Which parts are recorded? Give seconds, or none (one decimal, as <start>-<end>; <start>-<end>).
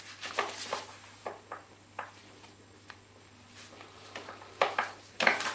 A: 0.0-5.5